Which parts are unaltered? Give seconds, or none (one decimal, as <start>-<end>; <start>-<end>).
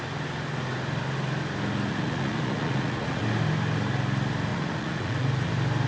0.0-1.9; 3.2-4.5; 5.5-5.9